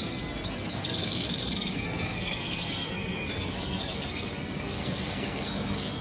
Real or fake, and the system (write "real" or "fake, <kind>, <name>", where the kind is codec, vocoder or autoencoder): fake, codec, SNAC